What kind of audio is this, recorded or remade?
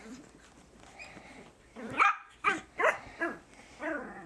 remade